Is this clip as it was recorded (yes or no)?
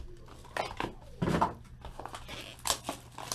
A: yes